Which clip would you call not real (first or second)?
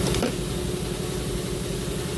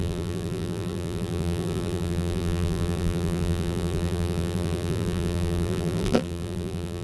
second